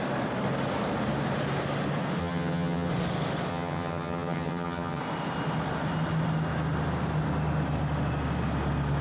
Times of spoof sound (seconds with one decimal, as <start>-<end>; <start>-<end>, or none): 2.2-2.9; 3.5-5.0